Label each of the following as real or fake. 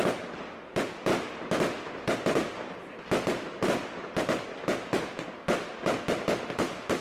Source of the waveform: real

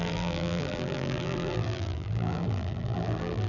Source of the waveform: fake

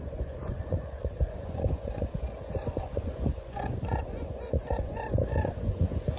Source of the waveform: fake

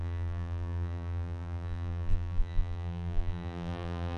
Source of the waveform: fake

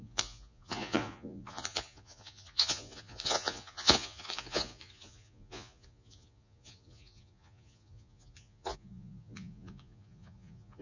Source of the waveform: fake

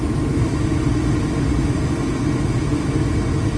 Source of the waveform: real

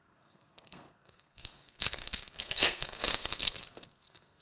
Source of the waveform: fake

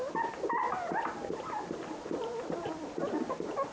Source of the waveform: real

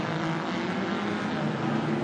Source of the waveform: real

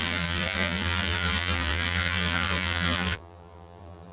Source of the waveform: fake